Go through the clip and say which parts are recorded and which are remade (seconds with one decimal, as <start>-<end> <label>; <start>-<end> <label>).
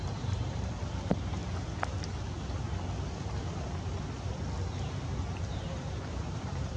0.0-1.4 remade; 1.4-5.5 recorded; 5.5-6.8 remade